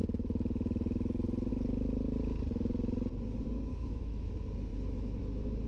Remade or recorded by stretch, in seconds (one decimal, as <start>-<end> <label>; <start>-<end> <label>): 0.0-3.7 recorded; 3.7-4.3 remade; 4.3-4.7 recorded; 4.7-5.2 remade; 5.2-5.7 recorded